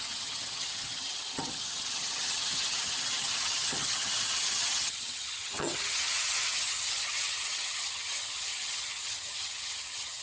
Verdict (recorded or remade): remade